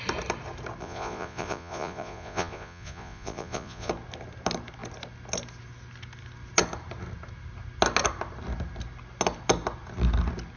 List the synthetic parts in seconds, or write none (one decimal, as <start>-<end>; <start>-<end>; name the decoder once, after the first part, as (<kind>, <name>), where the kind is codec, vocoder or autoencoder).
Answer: 0.8-3.9 (vocoder, Vocos)

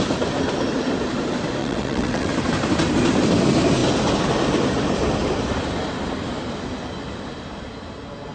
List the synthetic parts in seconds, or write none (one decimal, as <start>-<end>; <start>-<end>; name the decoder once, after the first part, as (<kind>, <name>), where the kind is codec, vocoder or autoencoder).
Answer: 1.6-2.3 (vocoder, WaveNeXt)